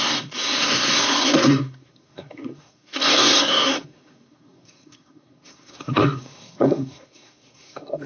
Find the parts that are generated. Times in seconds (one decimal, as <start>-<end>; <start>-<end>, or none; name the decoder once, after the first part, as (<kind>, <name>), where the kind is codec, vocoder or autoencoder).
0.0-8.1 (codec, SNAC)